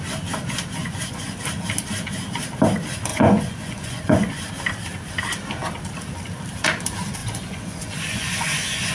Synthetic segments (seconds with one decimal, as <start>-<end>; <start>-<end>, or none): 0.8-1.4; 3.1-4.5; 7.2-8.9